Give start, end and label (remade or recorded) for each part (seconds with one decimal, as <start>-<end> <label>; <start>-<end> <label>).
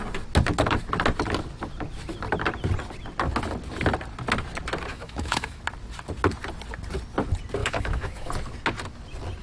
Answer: 0.0-4.9 recorded; 4.9-5.6 remade; 5.6-7.6 recorded; 7.6-8.3 remade; 8.3-9.4 recorded